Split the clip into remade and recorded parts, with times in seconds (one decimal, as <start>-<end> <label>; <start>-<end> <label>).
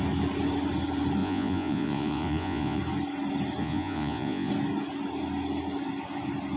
0.0-1.2 recorded; 1.2-2.8 remade; 2.8-3.6 recorded; 3.6-4.5 remade; 4.5-6.6 recorded